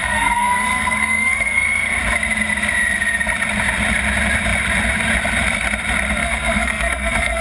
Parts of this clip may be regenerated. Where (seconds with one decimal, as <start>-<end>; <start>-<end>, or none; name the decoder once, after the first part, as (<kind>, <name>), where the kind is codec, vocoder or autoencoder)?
0.0-1.9 (codec, SNAC); 6.2-7.4